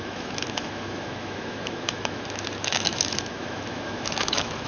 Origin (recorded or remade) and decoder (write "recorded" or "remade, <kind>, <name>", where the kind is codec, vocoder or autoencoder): remade, autoencoder, DAC-VAE